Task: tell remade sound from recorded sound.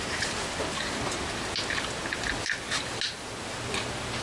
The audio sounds recorded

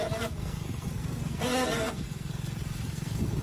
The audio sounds remade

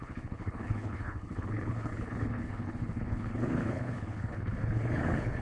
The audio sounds remade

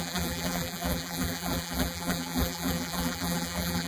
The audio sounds remade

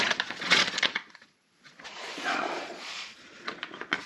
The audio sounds remade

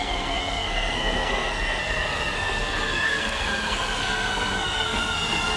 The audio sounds remade